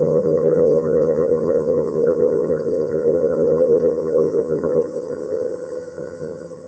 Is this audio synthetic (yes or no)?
yes